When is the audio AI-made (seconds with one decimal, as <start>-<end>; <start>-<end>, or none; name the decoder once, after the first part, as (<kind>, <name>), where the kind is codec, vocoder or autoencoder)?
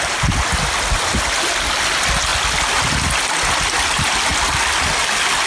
none